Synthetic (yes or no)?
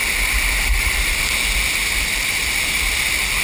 no